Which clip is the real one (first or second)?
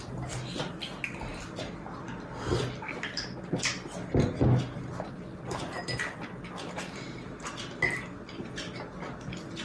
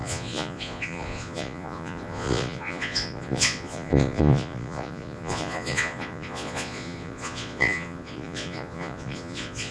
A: first